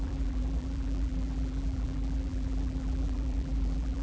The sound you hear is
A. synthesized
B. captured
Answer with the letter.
A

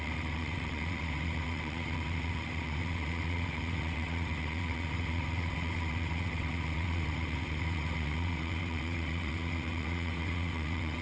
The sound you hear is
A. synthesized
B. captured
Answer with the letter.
A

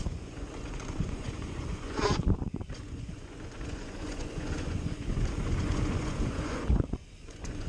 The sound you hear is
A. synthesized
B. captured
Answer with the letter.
A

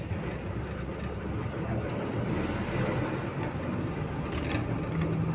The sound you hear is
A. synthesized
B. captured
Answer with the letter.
B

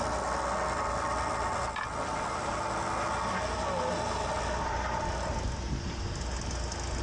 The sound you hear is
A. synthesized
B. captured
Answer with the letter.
B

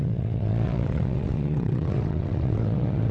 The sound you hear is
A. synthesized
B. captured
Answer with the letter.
A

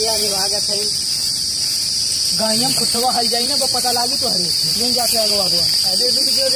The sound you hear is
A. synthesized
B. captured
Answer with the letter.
A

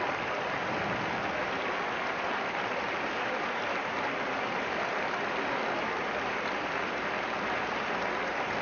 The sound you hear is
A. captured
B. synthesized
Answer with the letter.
A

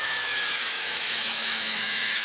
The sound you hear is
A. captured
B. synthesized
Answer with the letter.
B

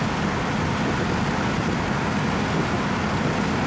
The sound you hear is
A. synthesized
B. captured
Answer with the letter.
B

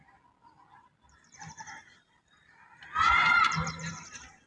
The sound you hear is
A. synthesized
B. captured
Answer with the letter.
A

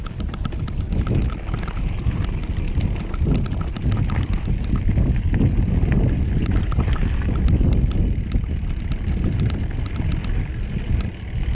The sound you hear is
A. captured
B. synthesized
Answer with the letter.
A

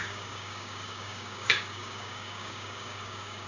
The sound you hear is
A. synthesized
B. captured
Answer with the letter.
A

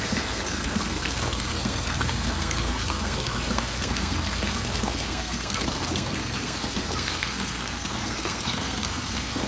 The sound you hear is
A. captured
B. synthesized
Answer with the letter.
B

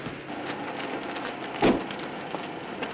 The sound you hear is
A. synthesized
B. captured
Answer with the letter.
B